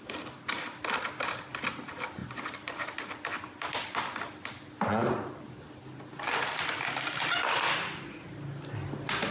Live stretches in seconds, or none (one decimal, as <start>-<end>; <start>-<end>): 0.0-2.2; 3.0-9.3